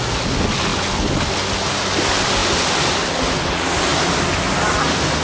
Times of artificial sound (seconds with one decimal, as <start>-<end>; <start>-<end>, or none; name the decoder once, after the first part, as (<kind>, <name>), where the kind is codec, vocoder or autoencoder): none